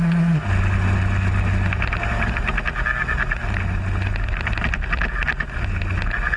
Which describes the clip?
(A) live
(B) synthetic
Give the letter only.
A